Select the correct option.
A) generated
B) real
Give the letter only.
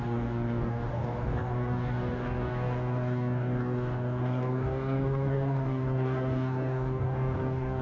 A